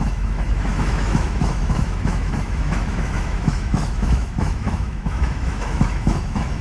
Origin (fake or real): fake